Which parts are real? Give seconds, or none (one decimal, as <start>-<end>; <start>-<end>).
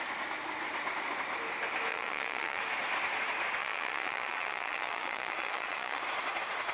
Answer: 0.0-1.9; 2.6-3.6; 6.0-6.7